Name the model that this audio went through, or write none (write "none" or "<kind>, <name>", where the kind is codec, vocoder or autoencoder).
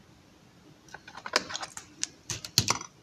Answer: none